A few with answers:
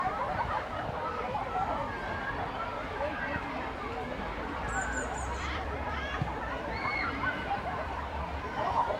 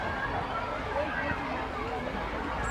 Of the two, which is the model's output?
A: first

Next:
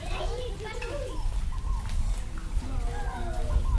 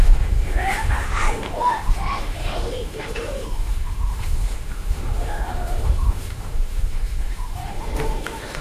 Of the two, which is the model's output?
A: second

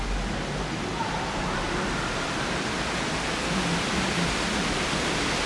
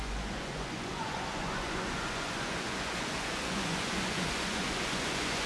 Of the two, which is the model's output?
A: second